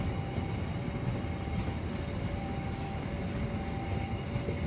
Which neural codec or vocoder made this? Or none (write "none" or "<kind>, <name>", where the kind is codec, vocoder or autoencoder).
none